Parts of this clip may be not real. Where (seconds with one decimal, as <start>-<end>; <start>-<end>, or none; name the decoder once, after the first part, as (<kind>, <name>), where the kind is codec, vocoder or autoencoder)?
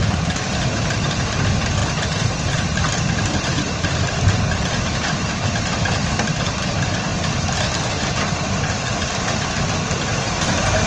0.0-1.8 (vocoder, BigVGAN v2); 3.2-10.9